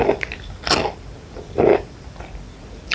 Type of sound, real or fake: fake